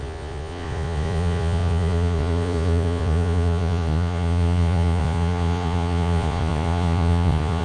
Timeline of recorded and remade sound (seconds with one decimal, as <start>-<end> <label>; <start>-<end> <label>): 0.0-7.6 remade

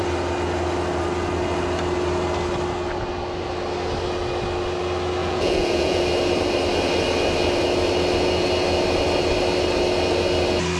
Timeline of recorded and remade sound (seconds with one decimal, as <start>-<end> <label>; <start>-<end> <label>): 0.0-5.2 recorded; 5.2-6.0 remade; 6.0-10.8 recorded

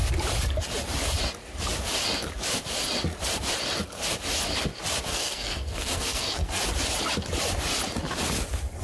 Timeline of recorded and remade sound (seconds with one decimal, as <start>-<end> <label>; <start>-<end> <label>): 0.0-5.1 recorded; 5.1-6.5 remade; 6.5-8.8 recorded

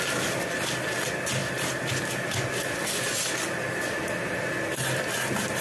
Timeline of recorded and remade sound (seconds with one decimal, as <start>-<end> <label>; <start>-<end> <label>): 0.0-5.6 recorded

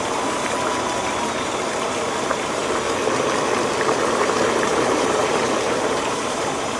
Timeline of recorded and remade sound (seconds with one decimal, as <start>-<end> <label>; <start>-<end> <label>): 0.0-2.6 remade; 2.6-4.0 recorded; 4.0-6.8 remade

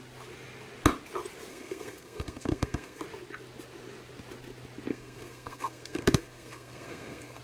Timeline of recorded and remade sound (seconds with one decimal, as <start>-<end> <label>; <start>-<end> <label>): 0.0-1.5 recorded; 1.5-3.0 remade; 3.0-4.9 recorded; 4.9-7.4 remade

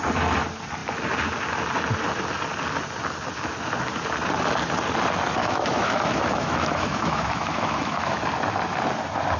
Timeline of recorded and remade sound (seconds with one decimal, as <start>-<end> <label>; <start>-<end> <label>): 0.0-5.4 recorded; 5.4-8.2 remade; 8.2-9.4 recorded

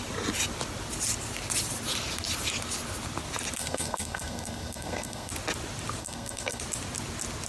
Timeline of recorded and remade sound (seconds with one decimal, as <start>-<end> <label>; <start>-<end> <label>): 0.0-3.6 recorded; 3.6-5.3 remade; 5.3-6.0 recorded; 6.0-6.6 remade; 6.6-7.5 recorded